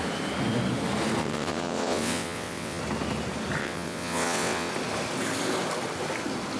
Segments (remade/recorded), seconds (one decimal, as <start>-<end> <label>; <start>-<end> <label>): 0.0-1.2 recorded; 1.2-2.8 remade; 2.8-3.6 recorded; 3.6-4.7 remade; 4.7-6.6 recorded